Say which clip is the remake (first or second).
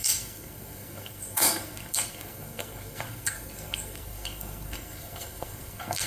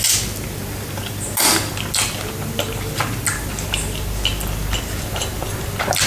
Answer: first